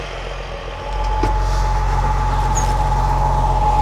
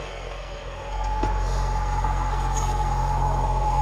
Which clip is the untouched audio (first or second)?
first